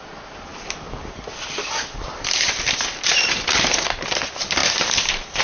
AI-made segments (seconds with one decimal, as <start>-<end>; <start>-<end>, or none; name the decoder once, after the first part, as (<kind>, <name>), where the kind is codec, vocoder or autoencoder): 0.5-3.7 (vocoder, BigVGAN v2); 4.6-5.4